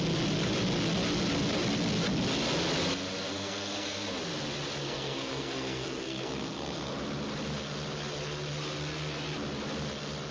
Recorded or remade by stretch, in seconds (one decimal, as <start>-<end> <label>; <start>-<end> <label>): 0.0-3.3 recorded; 3.3-4.2 remade; 4.2-4.8 recorded; 4.8-6.9 remade; 6.9-10.3 recorded

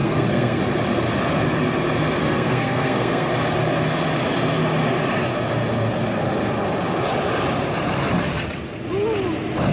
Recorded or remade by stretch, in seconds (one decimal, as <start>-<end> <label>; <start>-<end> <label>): 0.0-0.6 remade; 0.6-2.2 recorded; 2.2-3.3 remade; 3.3-9.7 recorded

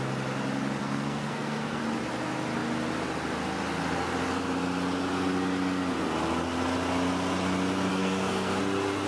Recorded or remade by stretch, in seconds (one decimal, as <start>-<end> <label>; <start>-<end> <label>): 0.0-0.8 recorded; 0.8-1.8 remade; 1.8-7.9 recorded; 7.9-8.6 remade; 8.6-9.1 recorded

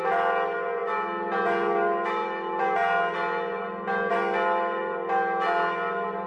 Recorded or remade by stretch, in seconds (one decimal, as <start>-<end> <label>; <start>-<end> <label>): 0.0-6.3 recorded